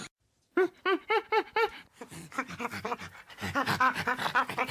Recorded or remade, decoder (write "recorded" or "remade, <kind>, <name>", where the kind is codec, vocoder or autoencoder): recorded